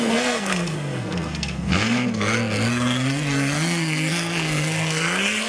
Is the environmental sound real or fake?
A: fake